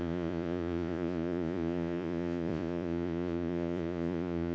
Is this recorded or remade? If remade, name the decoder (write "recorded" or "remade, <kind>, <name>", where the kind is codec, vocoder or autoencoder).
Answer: remade, vocoder, Vocos